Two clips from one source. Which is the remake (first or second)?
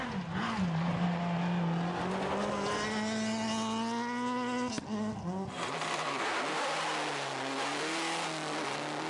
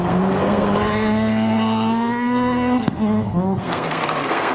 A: second